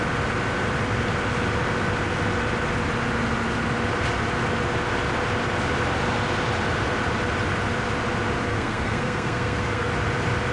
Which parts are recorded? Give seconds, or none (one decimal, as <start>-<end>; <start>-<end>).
0.0-8.5; 9.9-10.5